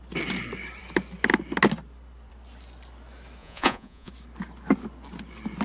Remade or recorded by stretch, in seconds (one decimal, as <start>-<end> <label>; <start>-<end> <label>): 0.0-3.4 recorded; 3.4-4.1 remade; 4.1-5.6 recorded